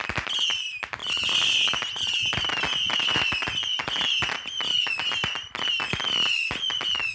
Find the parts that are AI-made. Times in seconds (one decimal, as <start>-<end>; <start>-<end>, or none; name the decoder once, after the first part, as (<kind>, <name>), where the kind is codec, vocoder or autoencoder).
none